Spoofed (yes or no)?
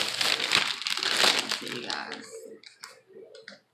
no